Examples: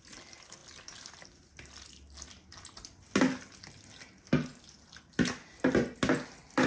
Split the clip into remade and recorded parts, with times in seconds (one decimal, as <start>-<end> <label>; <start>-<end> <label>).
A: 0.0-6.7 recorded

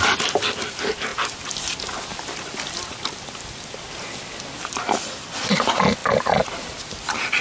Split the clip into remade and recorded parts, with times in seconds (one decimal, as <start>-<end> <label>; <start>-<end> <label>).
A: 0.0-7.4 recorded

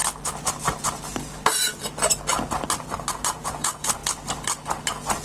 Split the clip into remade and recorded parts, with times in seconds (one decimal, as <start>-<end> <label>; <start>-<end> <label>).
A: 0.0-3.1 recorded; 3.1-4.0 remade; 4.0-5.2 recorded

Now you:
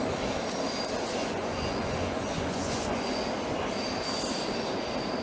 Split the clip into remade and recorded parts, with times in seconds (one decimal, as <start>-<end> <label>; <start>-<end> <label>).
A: 0.0-1.2 recorded; 1.2-3.2 remade; 3.2-5.2 recorded

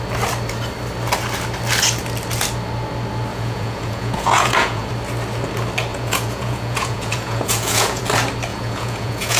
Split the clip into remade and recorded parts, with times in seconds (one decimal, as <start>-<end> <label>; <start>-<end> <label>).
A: 0.0-3.3 recorded; 3.3-4.9 remade; 4.9-5.9 recorded; 5.9-8.0 remade; 8.0-8.5 recorded; 8.5-9.4 remade

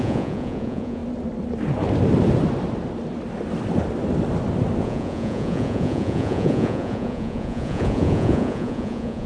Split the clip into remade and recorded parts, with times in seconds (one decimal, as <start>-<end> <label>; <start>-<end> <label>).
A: 0.0-1.0 remade; 1.0-4.8 recorded; 4.8-9.3 remade

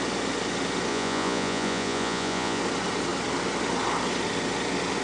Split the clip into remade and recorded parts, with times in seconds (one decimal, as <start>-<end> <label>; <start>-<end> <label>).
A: 0.0-0.9 recorded; 0.9-2.6 remade; 2.6-5.0 recorded